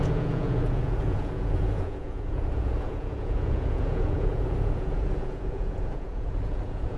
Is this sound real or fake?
fake